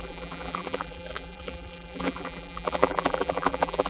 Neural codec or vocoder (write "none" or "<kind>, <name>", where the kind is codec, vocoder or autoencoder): vocoder, BigVGAN v2